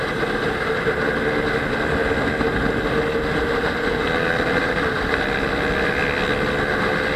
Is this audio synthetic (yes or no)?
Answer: no